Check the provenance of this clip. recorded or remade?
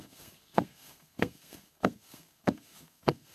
remade